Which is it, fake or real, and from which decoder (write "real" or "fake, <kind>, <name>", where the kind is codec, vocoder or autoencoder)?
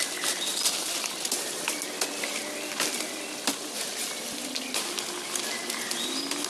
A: real